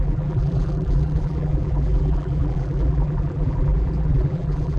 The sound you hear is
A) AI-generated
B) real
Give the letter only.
A